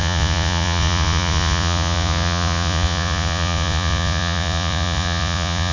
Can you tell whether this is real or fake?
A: fake